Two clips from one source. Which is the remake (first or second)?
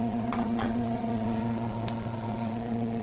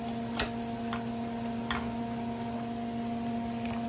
first